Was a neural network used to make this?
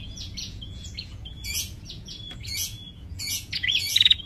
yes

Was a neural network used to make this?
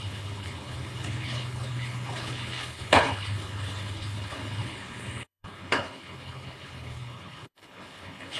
yes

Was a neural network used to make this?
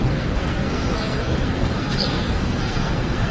yes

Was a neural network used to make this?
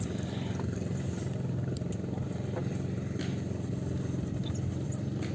no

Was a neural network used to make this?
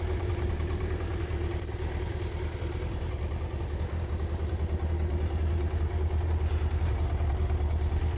no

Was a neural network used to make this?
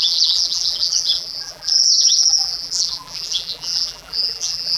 yes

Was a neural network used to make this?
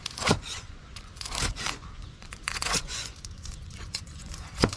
yes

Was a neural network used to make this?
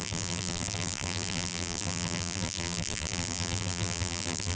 yes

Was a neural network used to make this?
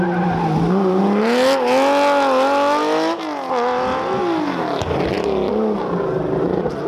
no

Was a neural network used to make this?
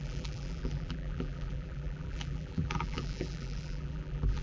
yes